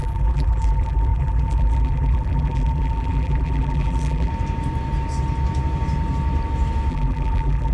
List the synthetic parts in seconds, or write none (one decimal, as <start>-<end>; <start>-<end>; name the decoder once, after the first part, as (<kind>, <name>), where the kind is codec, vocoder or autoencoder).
0.0-4.3 (vocoder, BigVGAN v2); 6.9-7.7